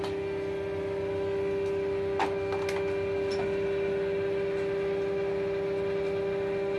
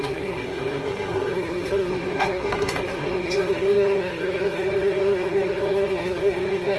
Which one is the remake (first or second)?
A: second